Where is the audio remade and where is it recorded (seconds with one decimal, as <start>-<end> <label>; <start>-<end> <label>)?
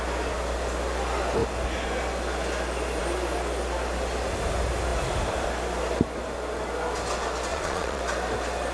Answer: 0.0-7.5 recorded; 7.5-8.0 remade; 8.0-8.7 recorded